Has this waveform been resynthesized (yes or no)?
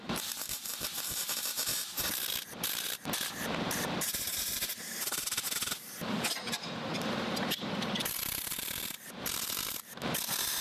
yes